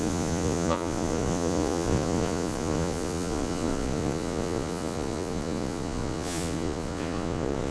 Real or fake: fake